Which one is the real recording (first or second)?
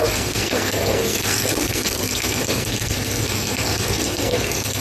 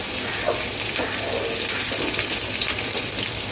second